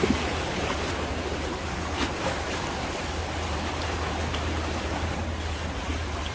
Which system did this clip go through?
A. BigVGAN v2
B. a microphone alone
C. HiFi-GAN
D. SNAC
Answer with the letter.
A